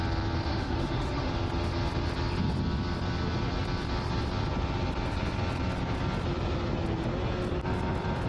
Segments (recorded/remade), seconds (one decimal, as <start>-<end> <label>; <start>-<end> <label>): 0.0-0.5 recorded; 0.5-1.3 remade; 1.3-8.3 recorded